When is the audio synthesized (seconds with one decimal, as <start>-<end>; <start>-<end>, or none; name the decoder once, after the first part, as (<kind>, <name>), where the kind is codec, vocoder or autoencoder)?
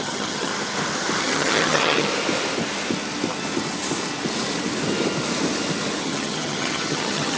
0.0-0.5 (vocoder, HiFi-GAN); 1.2-2.1; 6.0-7.4